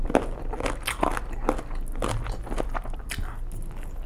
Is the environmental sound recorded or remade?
recorded